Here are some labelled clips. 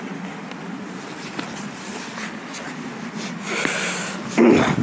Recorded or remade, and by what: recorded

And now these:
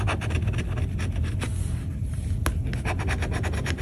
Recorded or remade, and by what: recorded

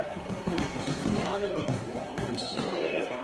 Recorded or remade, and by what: remade, codec, SNAC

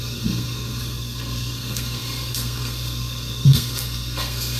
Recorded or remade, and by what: remade, codec, SNAC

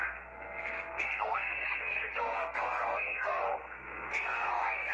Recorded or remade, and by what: remade, codec, SNAC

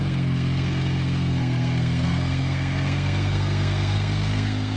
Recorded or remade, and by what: remade, codec, SNAC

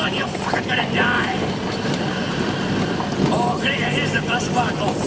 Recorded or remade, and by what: recorded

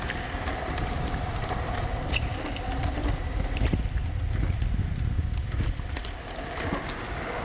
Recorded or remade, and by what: recorded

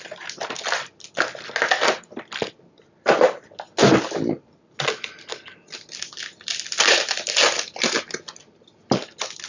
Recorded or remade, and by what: recorded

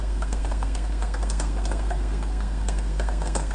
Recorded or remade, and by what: remade, codec, SNAC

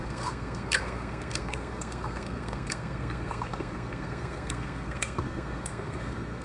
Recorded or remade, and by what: remade, codec, SNAC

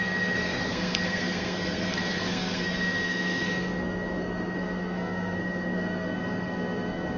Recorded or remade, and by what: remade, codec, SNAC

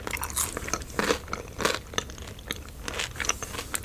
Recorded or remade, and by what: recorded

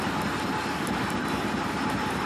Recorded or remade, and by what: recorded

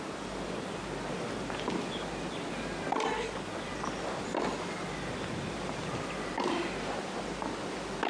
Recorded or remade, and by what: recorded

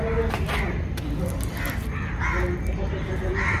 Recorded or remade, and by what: recorded